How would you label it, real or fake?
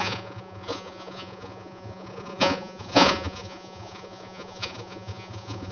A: fake